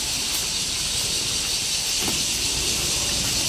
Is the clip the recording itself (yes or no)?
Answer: yes